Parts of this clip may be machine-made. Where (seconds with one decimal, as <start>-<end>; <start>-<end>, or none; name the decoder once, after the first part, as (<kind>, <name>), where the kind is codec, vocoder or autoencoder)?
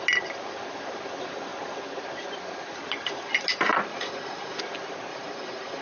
3.9-4.6 (vocoder, Vocos); 5.1-5.8